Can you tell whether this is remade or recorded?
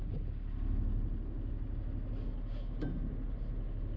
recorded